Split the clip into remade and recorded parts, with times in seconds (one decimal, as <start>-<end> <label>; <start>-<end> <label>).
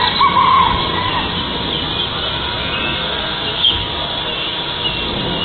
0.0-5.4 recorded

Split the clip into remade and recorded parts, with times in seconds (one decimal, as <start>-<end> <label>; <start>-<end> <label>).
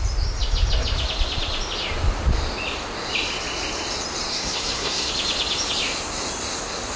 0.0-4.3 recorded; 4.3-5.1 remade; 5.1-7.0 recorded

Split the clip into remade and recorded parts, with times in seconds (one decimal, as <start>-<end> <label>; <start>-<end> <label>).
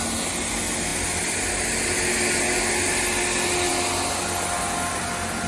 0.0-5.5 recorded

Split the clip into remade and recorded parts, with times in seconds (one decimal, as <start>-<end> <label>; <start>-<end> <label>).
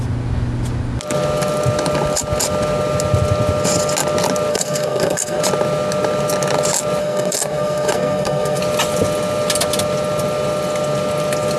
0.0-4.5 recorded; 4.5-5.4 remade; 5.4-7.0 recorded; 7.0-8.6 remade; 8.6-11.6 recorded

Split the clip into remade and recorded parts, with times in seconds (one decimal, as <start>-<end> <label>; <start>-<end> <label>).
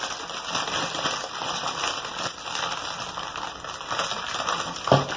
0.0-5.2 recorded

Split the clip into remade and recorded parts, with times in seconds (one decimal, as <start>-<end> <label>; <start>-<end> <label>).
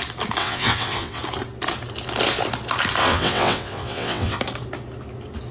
0.0-0.4 recorded; 0.4-1.2 remade; 1.2-3.0 recorded; 3.0-4.4 remade; 4.4-5.5 recorded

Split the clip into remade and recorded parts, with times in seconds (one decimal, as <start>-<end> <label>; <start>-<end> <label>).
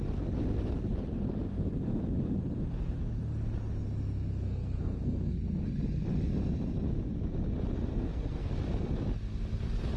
0.0-4.3 recorded; 4.3-5.4 remade; 5.4-7.9 recorded; 7.9-8.5 remade; 8.5-10.0 recorded